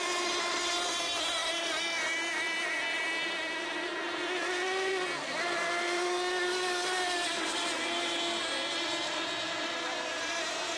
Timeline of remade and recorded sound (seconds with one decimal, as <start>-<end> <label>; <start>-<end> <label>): 0.0-10.8 recorded